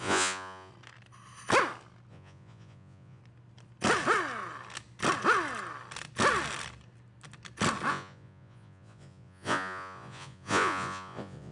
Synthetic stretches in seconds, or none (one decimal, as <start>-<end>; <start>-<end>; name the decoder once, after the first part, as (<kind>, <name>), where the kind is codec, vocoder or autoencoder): 0.0-0.7 (vocoder, Vocos); 2.1-3.2; 7.9-11.5